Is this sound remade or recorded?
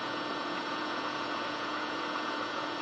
remade